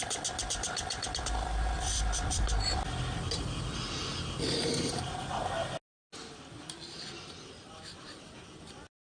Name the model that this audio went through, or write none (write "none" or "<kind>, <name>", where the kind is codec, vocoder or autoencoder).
none